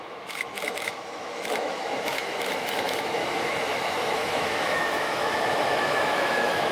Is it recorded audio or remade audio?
remade